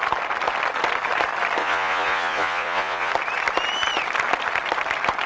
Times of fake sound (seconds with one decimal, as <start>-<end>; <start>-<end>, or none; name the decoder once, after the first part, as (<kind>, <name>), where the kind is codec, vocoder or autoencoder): 1.6-3.1 (vocoder, Vocos)